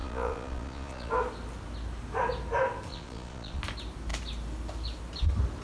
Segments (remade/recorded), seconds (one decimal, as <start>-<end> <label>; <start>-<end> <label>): 0.0-1.1 remade; 1.1-2.9 recorded; 2.9-3.6 remade; 3.6-5.6 recorded